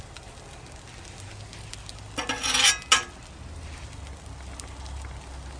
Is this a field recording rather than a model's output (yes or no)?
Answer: yes